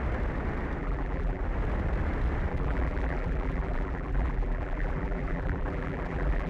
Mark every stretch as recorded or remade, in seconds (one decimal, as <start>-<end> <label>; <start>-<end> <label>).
0.0-0.8 recorded; 0.8-1.4 remade; 1.4-2.5 recorded; 2.5-6.5 remade